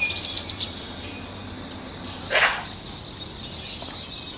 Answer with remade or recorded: recorded